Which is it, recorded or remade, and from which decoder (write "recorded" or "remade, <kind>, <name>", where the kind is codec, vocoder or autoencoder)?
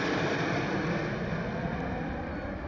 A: recorded